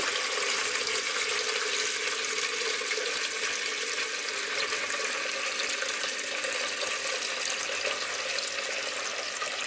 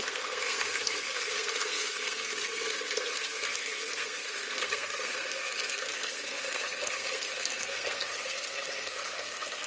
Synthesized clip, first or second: second